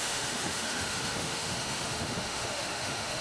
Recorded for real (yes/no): no